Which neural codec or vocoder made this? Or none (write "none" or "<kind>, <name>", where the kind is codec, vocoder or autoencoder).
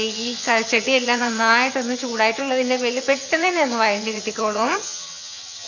vocoder, HiFi-GAN